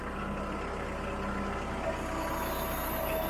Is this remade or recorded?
recorded